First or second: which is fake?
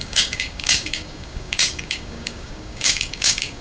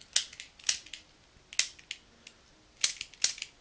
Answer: first